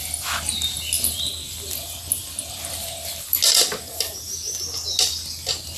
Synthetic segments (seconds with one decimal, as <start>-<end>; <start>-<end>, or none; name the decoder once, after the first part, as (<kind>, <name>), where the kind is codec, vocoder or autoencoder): none